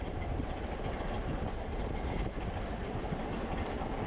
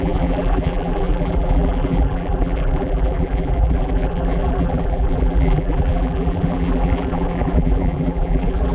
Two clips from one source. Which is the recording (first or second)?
first